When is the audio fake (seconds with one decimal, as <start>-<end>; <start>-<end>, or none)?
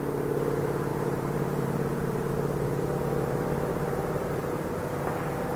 0.9-2.3; 3.7-4.8